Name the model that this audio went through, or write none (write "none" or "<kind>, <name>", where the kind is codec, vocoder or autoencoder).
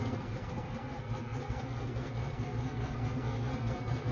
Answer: codec, SNAC